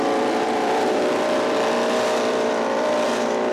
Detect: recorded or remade remade